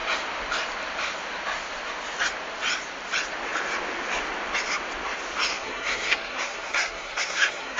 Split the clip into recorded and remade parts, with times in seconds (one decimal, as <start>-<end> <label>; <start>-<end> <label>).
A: 0.0-5.5 recorded; 5.5-7.8 remade